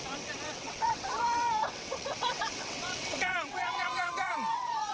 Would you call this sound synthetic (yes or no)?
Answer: yes